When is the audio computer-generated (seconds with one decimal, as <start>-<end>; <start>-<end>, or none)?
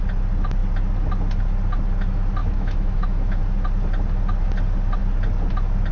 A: 2.4-3.4